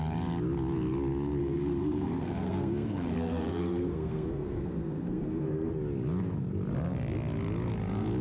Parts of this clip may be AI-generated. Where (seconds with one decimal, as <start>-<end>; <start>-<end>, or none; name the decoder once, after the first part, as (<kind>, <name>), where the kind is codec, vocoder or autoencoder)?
1.4-5.7 (codec, SNAC)